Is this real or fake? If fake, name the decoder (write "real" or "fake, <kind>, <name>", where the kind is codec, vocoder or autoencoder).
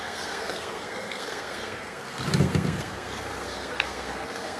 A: fake, codec, SNAC